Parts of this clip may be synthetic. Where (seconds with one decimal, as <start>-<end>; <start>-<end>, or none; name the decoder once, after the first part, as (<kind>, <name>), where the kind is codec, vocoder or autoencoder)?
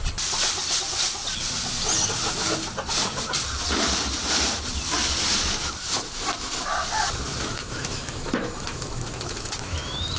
7.3-10.2 (autoencoder, DAC-VAE)